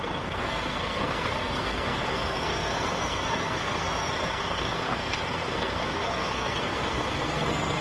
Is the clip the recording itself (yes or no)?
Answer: no